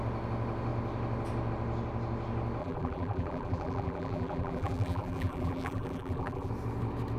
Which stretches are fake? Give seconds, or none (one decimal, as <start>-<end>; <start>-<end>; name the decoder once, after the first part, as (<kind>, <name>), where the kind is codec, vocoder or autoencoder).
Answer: 2.6-6.5 (vocoder, BigVGAN v2)